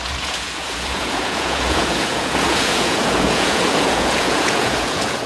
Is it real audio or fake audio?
fake